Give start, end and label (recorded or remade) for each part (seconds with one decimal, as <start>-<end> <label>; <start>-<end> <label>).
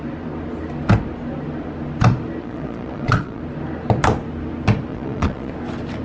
0.0-2.4 recorded; 2.4-3.4 remade; 3.4-4.9 recorded; 4.9-5.5 remade; 5.5-6.0 recorded